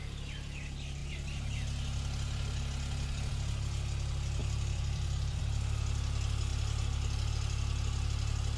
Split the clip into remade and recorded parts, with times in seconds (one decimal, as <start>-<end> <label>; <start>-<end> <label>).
0.0-4.4 recorded; 4.4-5.4 remade; 5.4-8.6 recorded